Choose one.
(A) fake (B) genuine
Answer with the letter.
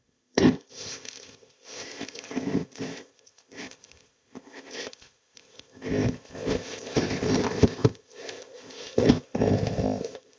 A